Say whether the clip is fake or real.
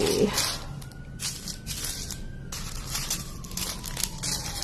real